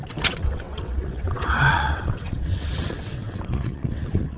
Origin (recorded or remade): remade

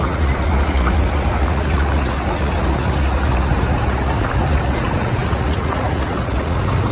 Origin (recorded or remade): remade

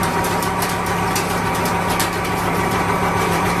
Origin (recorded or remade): remade